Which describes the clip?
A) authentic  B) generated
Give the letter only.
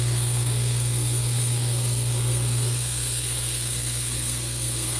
B